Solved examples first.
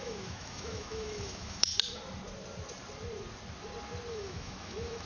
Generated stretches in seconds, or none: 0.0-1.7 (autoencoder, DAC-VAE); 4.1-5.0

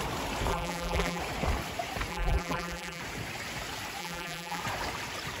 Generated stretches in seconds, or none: 0.5-1.2 (vocoder, BigVGAN v2); 2.1-3.0; 4.0-4.6

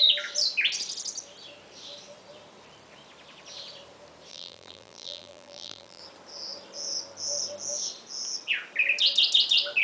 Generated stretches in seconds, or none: 4.3-6.0 (vocoder, BigVGAN v2)

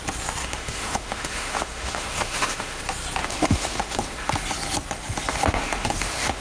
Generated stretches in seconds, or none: 0.4-2.8 (autoencoder, DAC-VAE); 3.2-4.3; 5.3-6.4

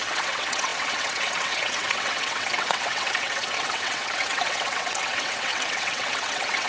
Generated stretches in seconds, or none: 0.0-6.7 (vocoder, WaveNeXt)

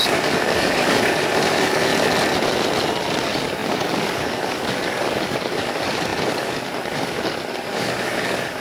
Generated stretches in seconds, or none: 0.0-1.9 (codec, DAC); 3.2-8.6

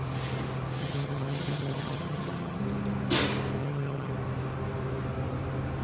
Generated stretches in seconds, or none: 0.8-2.6 (vocoder, HiFi-GAN); 3.6-4.1